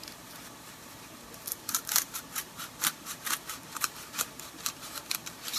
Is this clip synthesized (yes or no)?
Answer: yes